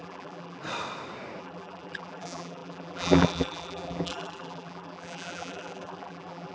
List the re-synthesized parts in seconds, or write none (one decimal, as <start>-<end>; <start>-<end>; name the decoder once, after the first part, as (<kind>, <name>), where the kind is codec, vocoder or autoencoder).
0.0-0.6 (vocoder, BigVGAN v2); 1.4-6.5